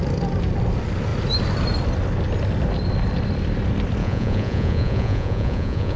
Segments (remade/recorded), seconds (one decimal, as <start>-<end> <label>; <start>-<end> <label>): 0.0-4.0 recorded; 4.0-6.0 remade